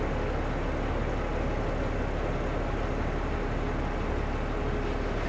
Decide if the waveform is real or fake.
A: real